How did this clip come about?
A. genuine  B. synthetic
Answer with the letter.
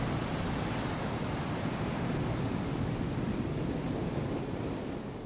A